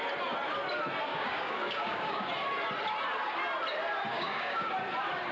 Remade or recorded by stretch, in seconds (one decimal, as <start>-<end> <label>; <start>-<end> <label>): 0.0-1.1 recorded; 1.1-2.3 remade; 2.3-4.1 recorded; 4.1-4.7 remade; 4.7-5.3 recorded